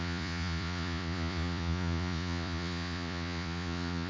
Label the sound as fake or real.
fake